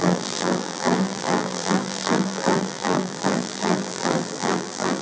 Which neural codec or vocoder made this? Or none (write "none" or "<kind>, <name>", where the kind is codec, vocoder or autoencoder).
vocoder, BigVGAN v2